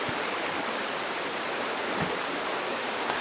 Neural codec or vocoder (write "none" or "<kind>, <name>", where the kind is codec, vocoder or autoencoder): vocoder, BigVGAN v2